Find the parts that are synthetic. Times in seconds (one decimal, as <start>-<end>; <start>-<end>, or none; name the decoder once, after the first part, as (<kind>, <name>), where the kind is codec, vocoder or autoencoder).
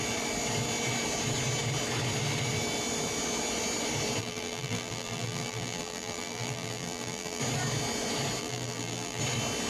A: 4.2-7.4 (vocoder, BigVGAN v2); 8.4-9.2